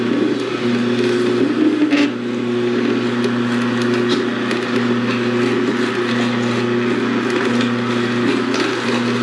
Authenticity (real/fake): real